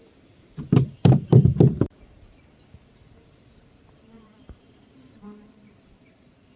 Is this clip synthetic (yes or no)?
yes